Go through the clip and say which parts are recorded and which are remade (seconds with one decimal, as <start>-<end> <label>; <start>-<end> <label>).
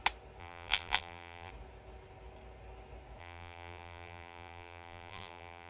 0.0-0.4 recorded; 0.4-1.5 remade; 1.5-3.2 recorded; 3.2-5.7 remade